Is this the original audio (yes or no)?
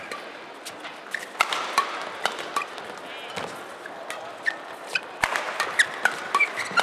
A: yes